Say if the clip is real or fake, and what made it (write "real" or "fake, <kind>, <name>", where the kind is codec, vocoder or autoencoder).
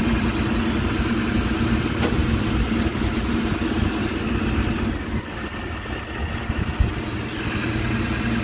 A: real